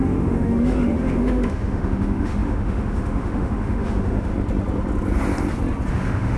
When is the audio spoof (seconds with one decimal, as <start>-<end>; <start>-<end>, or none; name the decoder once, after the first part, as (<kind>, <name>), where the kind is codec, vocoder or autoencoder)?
0.0-4.3 (autoencoder, DAC-VAE); 5.9-6.4